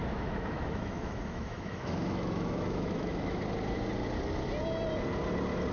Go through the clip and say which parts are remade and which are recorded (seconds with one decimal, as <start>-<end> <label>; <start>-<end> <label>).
0.0-3.4 remade; 3.4-5.7 recorded